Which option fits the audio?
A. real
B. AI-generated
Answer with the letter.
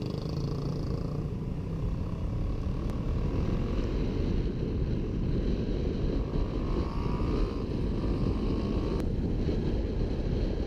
A